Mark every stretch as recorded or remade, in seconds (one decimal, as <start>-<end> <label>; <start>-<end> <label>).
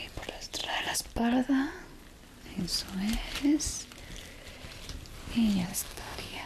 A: 0.0-5.7 recorded; 5.7-6.5 remade